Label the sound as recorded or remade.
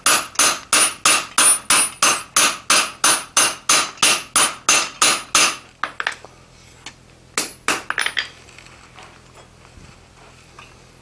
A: recorded